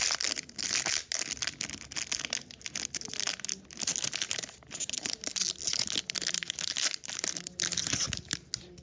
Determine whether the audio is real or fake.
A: real